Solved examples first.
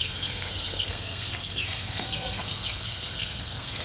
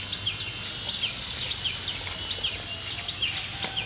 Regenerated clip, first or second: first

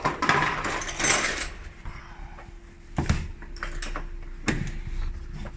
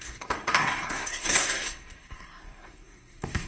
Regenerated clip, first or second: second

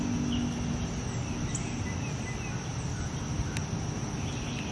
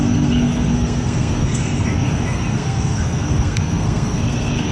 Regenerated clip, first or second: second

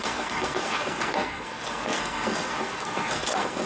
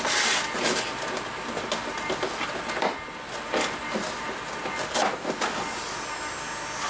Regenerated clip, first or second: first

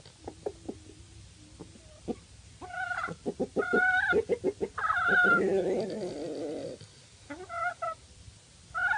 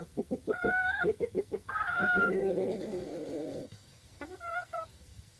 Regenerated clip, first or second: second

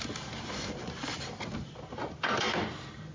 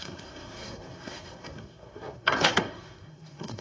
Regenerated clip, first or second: second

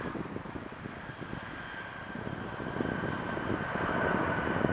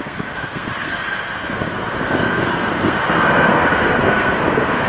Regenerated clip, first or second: second